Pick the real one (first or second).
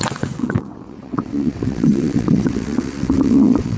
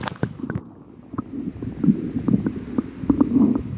second